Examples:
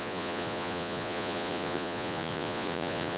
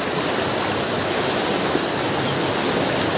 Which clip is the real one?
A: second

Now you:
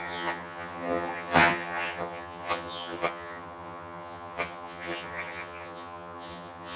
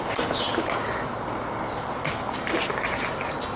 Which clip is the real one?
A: second